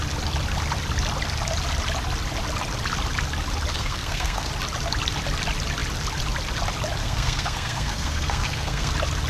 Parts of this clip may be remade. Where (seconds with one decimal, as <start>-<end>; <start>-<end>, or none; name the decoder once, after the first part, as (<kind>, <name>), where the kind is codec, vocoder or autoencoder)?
3.7-4.5 (codec, SNAC); 7.0-8.9